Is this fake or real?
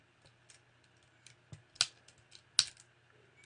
real